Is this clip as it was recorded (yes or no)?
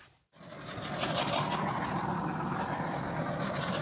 yes